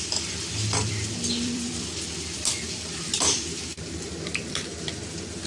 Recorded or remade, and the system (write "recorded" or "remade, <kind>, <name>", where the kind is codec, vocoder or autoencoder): remade, vocoder, BigVGAN v2